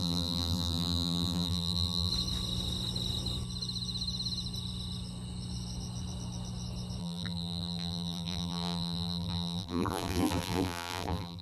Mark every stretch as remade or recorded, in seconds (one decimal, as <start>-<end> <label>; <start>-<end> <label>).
0.0-2.1 remade; 2.1-7.0 recorded; 7.0-11.4 remade